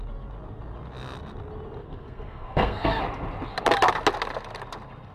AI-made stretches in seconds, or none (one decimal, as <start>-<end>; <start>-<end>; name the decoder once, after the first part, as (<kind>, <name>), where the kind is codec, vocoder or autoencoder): 1.8-3.0 (codec, SNAC)